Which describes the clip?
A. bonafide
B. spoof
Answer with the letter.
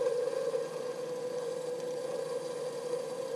B